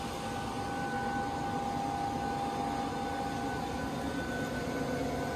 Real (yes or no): yes